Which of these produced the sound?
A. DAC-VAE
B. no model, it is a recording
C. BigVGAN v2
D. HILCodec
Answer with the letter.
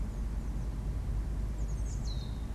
B